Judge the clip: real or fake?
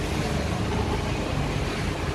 real